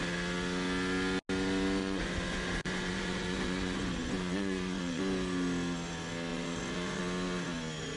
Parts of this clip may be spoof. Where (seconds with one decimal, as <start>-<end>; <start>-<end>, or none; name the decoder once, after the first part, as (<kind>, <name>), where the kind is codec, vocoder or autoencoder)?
1.8-5.0 (vocoder, Vocos); 6.3-7.0

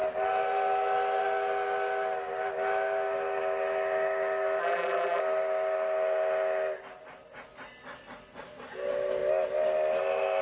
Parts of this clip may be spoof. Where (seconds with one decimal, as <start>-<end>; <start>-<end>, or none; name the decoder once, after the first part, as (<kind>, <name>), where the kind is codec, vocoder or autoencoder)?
4.6-5.2 (vocoder, BigVGAN v2)

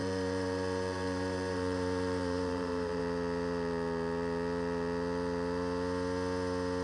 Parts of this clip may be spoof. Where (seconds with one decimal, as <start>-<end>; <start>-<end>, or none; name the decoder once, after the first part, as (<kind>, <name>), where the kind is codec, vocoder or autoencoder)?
0.0-3.0 (vocoder, BigVGAN v2)

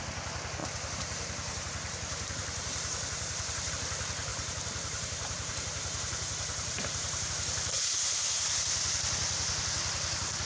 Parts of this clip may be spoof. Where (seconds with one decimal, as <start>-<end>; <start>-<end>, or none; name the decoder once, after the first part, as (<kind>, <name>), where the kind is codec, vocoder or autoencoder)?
0.6-3.7 (vocoder, BigVGAN v2); 4.3-7.3

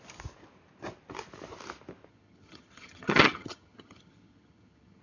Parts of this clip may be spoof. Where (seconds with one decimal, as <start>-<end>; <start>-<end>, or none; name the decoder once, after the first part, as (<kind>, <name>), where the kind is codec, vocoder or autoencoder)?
2.1-5.0 (vocoder, HiFi-GAN)

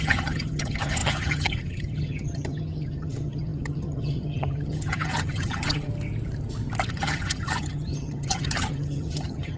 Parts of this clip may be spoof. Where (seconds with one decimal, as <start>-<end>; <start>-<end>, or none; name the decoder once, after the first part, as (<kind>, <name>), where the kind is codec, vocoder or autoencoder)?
0.0-5.9 (vocoder, HiFi-GAN); 6.9-9.6